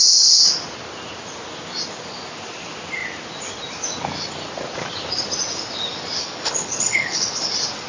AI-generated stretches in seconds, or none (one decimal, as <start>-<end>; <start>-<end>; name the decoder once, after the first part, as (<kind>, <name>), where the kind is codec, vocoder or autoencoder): 6.2-7.5 (codec, HILCodec)